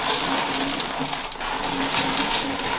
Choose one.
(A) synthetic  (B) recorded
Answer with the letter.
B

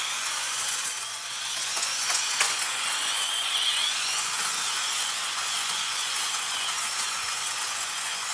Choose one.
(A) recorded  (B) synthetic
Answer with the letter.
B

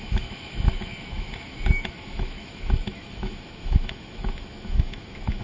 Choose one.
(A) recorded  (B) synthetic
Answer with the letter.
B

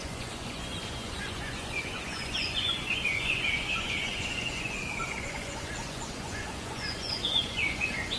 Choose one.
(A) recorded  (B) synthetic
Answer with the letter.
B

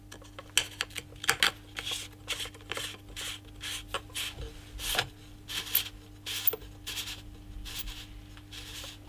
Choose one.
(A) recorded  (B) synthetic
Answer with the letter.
A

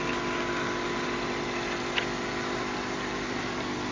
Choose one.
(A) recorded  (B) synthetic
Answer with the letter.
A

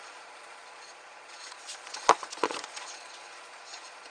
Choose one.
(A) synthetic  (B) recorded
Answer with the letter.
A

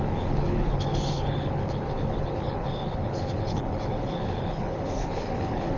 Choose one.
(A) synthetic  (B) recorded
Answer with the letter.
A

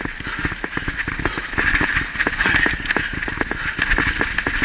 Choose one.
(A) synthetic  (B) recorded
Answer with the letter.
B